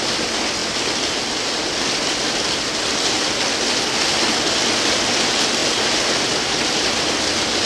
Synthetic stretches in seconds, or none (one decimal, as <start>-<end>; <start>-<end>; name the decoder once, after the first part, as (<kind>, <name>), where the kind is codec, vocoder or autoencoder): 0.6-2.8 (vocoder, BigVGAN v2)